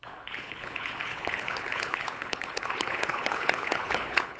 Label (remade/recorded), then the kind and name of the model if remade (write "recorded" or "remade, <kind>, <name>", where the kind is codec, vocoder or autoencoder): remade, codec, HILCodec